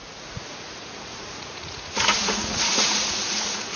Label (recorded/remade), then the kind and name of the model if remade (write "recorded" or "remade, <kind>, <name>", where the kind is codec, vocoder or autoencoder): remade, vocoder, Vocos